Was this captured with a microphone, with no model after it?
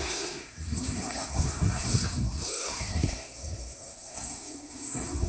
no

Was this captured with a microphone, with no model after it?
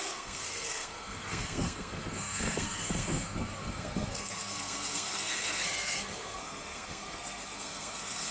no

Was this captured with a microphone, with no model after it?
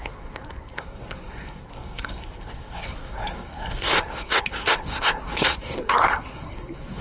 no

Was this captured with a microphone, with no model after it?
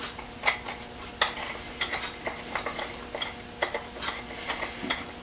yes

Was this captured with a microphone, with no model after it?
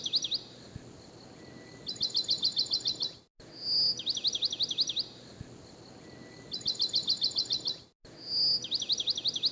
yes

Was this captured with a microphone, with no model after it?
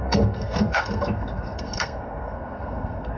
no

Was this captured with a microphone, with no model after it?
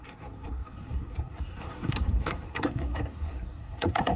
no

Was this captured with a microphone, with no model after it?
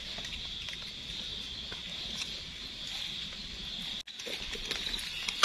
yes